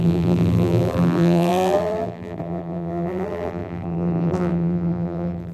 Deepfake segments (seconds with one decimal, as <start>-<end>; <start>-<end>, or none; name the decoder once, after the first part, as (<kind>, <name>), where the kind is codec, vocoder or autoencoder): 0.0-5.5 (vocoder, BigVGAN v2)